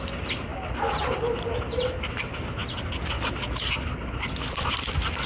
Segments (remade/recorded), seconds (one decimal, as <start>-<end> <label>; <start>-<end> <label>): 0.0-5.3 recorded